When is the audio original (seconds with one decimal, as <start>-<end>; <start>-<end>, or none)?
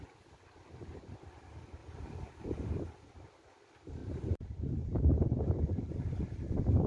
0.0-1.8; 2.7-4.0; 6.2-6.9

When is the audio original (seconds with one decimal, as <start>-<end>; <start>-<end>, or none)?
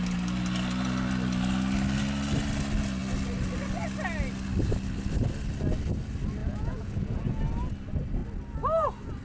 0.0-6.4; 7.4-9.2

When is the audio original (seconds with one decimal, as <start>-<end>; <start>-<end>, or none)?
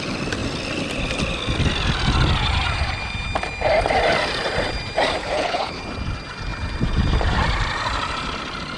0.0-5.2; 5.8-8.8